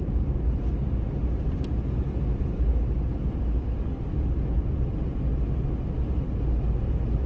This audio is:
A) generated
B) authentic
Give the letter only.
B